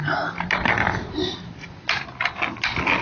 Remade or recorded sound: recorded